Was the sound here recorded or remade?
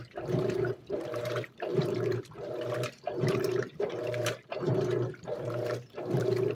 remade